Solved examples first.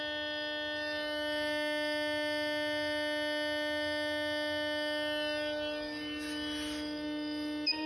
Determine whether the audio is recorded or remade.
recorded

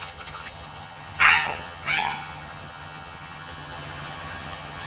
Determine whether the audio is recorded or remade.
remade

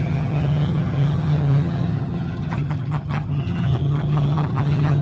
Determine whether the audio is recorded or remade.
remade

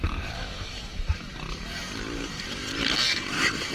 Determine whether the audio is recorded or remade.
remade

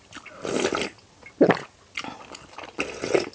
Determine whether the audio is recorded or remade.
recorded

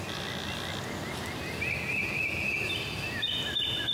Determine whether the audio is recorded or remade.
recorded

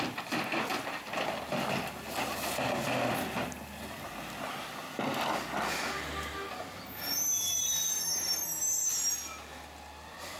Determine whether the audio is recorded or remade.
recorded